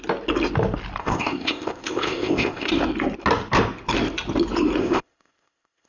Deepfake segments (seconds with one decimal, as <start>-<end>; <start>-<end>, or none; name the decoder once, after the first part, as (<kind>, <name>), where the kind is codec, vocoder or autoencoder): 1.0-2.7 (codec, ZipCodec); 4.8-5.9